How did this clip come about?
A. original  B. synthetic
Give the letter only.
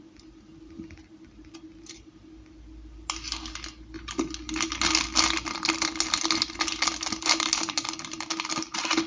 A